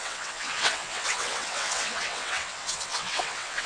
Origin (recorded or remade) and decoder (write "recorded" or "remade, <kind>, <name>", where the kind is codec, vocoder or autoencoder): remade, vocoder, WaveNeXt